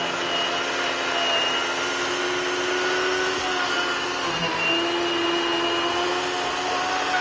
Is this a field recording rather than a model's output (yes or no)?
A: yes